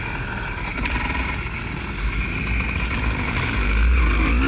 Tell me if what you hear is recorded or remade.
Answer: recorded